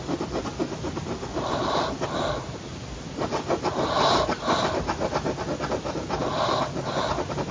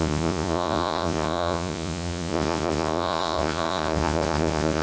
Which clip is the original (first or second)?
first